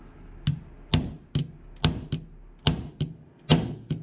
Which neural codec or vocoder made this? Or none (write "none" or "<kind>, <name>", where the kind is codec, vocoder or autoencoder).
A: none